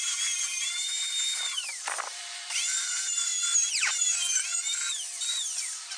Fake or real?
fake